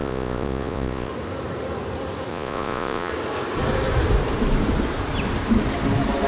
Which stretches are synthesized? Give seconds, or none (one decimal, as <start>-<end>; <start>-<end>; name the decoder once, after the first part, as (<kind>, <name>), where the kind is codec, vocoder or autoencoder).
0.0-1.1 (vocoder, Vocos); 2.3-3.1